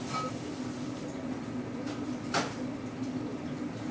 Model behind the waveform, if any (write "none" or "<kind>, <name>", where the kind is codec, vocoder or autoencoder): none